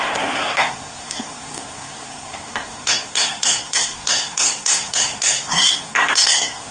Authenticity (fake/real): fake